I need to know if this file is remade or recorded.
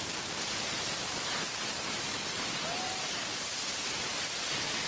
recorded